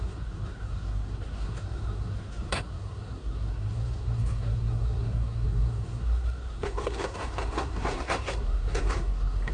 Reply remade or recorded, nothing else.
remade